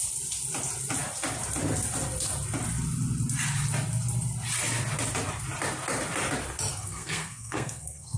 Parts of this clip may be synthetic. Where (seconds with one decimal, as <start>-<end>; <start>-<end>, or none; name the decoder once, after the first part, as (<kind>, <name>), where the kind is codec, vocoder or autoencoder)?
6.7-8.2 (codec, SNAC)